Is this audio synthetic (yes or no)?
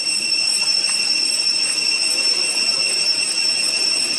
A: no